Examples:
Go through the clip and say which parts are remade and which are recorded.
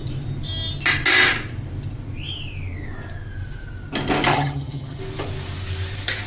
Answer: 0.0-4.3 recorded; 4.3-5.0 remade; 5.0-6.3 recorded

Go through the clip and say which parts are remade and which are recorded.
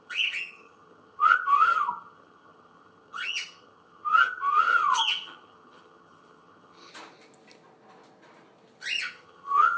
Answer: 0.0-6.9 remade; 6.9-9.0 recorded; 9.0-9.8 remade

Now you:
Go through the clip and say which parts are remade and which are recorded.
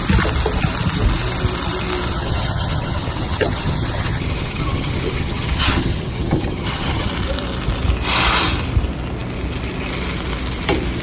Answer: 0.0-2.1 recorded; 2.1-7.1 remade; 7.1-11.0 recorded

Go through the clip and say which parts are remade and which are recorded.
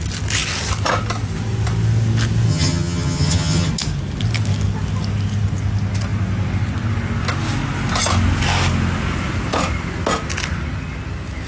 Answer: 0.0-2.5 recorded; 2.5-3.7 remade; 3.7-11.5 recorded